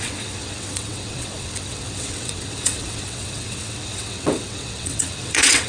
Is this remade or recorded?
remade